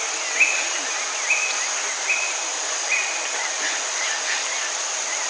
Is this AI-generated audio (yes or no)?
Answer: no